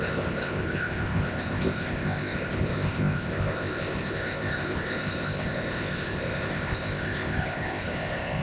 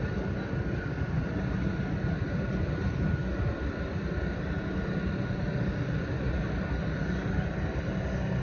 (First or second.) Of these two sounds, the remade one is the first